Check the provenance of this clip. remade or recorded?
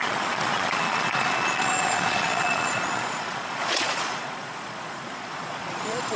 remade